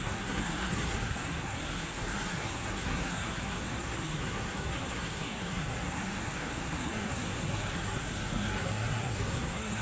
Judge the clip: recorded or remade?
remade